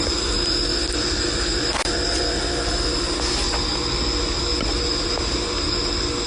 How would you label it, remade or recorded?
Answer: recorded